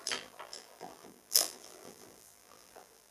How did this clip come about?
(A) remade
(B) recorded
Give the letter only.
A